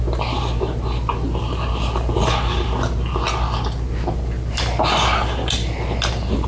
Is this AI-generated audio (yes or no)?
no